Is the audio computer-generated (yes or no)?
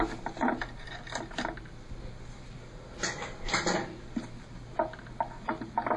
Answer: no